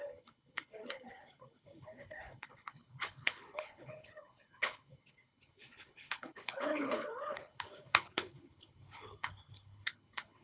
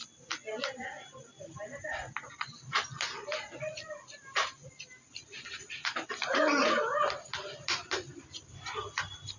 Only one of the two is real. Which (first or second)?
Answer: second